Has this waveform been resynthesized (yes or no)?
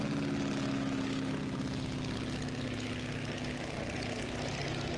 no